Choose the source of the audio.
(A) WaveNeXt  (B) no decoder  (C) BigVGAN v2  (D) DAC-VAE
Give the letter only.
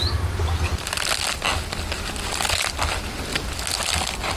B